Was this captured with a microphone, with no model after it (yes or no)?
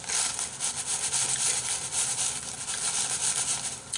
yes